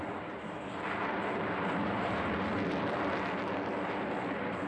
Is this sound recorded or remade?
recorded